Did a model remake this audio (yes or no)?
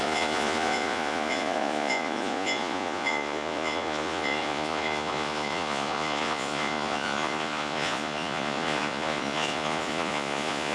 yes